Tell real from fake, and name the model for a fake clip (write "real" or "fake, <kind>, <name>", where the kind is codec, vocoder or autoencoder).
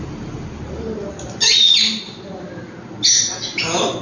real